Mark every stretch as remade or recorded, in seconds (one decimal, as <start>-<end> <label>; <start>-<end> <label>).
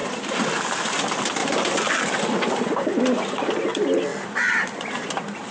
0.0-1.4 recorded; 1.4-1.9 remade; 1.9-4.1 recorded; 4.1-5.1 remade; 5.1-5.5 recorded